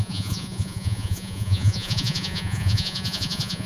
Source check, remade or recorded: remade